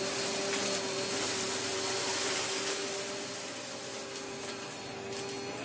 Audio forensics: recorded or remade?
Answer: recorded